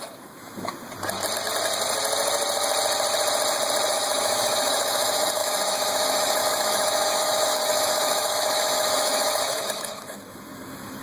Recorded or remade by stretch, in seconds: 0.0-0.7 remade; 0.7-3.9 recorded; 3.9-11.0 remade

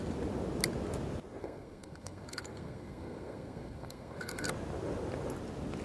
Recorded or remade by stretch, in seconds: 0.0-1.4 recorded; 1.4-4.5 remade; 4.5-5.8 recorded